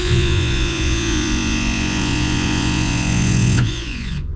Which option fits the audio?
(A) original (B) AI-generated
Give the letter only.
B